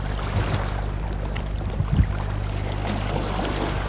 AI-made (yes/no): no